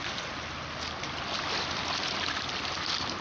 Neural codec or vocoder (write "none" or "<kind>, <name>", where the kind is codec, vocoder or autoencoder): none